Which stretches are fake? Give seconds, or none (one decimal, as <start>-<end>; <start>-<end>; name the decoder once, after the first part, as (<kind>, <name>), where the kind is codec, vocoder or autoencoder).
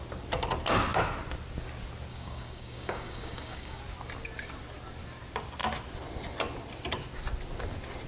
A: 2.1-3.8 (codec, DAC)